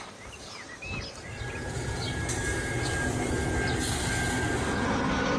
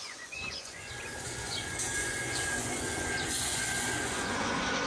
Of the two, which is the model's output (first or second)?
second